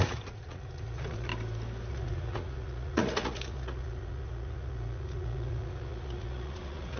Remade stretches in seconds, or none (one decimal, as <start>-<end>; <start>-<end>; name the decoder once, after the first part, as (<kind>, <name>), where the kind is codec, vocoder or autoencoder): 0.0-1.3 (vocoder, Vocos); 1.9-7.0